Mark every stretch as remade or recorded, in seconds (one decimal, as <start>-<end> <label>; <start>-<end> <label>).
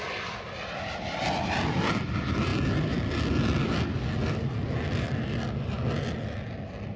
0.0-7.0 recorded